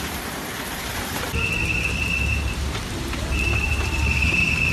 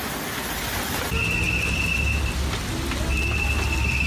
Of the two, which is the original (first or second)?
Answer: second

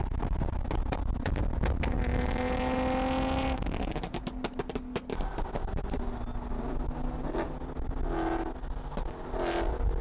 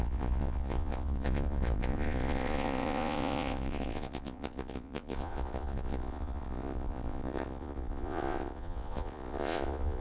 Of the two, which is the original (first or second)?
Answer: first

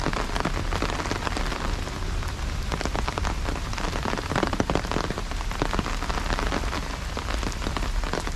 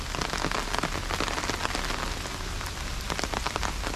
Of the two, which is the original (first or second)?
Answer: second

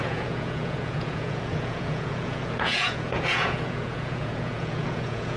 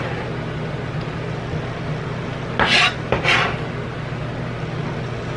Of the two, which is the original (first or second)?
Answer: second